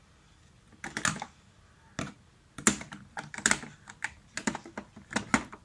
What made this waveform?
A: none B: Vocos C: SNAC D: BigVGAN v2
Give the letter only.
A